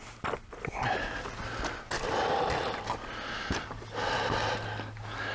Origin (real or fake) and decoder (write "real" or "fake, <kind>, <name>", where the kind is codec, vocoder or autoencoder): real